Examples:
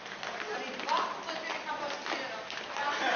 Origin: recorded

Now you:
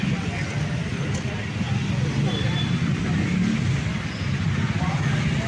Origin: recorded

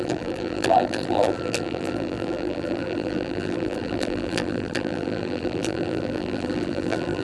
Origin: remade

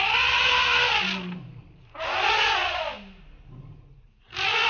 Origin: recorded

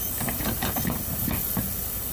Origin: recorded